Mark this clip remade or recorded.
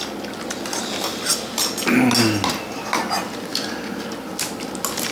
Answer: recorded